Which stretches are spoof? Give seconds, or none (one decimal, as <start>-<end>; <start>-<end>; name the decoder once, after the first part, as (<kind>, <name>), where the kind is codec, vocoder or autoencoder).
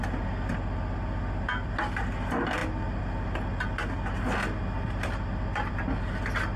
none